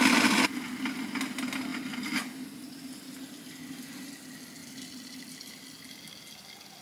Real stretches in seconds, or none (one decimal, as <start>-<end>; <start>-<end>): 0.0-4.6; 6.0-6.8